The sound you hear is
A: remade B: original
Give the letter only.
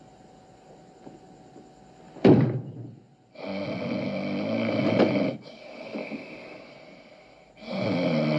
B